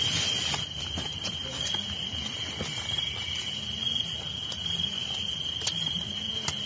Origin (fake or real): real